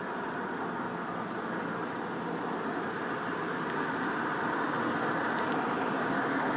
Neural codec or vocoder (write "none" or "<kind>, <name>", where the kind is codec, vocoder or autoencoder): none